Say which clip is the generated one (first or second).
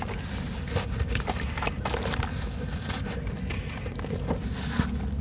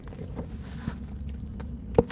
second